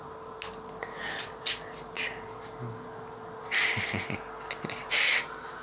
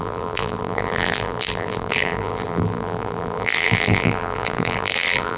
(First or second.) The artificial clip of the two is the second